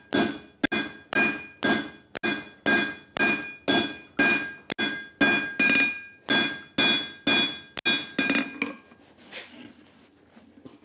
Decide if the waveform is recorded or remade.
recorded